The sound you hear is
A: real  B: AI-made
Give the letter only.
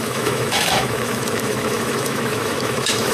B